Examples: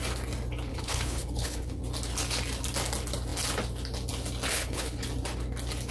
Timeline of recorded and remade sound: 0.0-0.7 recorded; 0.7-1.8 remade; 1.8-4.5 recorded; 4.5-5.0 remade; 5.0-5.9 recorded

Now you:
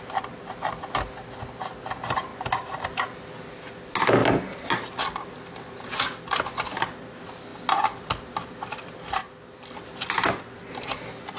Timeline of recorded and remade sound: 0.0-11.4 recorded

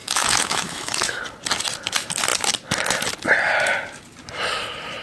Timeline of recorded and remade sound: 0.0-1.2 remade; 1.2-5.0 recorded

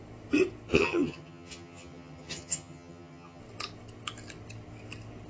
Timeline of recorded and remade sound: 0.0-0.7 recorded; 0.7-3.4 remade; 3.4-5.3 recorded

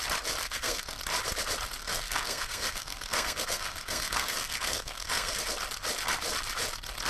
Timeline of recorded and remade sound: 0.0-0.4 recorded; 0.4-1.0 remade; 1.0-1.8 recorded; 1.8-5.4 remade; 5.4-7.1 recorded

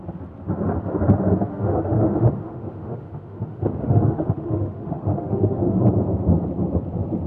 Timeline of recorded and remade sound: 0.0-1.5 recorded; 1.5-5.8 remade; 5.8-7.3 recorded

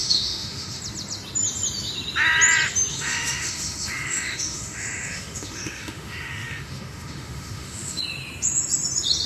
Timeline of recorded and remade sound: 0.0-0.8 remade; 0.8-2.9 recorded; 2.9-8.0 remade; 8.0-9.3 recorded